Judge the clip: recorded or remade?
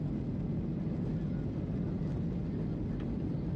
recorded